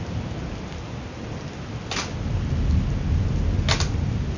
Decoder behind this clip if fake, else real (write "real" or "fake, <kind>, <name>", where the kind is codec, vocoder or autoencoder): real